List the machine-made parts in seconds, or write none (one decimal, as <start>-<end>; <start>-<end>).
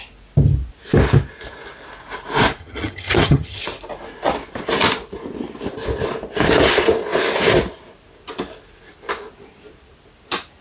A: 2.6-3.6